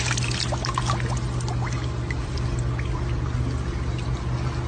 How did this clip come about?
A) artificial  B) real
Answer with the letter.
B